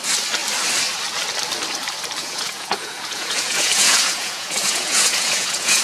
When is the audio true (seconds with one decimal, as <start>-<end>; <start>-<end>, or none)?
0.0-2.2